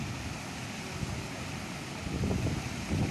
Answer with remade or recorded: recorded